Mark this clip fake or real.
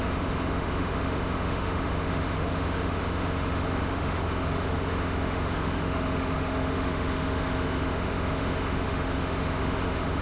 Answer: fake